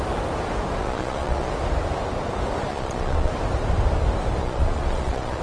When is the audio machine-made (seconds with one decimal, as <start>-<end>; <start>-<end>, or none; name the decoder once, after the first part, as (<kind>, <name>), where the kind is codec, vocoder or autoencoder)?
0.8-1.5 (vocoder, Vocos); 2.7-3.3; 4.4-5.4